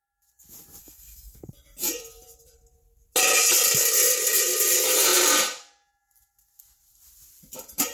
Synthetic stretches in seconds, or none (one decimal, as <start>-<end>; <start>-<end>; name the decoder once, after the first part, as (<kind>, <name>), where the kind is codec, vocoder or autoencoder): 0.8-1.5 (codec, SNAC)